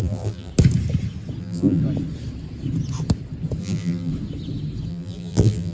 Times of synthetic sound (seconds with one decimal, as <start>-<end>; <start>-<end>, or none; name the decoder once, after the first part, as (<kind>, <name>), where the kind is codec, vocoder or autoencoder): 0.0-0.5 (vocoder, BigVGAN v2); 1.4-1.8; 3.6-4.1; 4.9-5.7